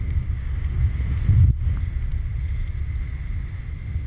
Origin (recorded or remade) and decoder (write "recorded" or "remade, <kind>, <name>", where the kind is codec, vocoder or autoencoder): recorded